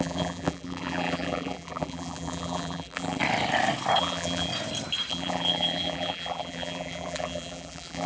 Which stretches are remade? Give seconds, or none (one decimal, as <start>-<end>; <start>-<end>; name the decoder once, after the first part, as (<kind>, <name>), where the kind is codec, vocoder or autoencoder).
0.0-3.2 (vocoder, BigVGAN v2); 4.0-4.5; 5.1-8.1